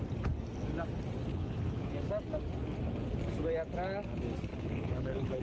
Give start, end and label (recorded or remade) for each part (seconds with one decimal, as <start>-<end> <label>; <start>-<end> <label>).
0.0-1.3 recorded; 1.3-1.9 remade; 1.9-4.5 recorded; 4.5-5.4 remade